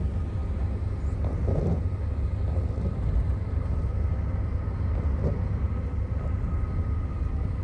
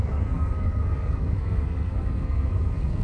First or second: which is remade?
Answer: second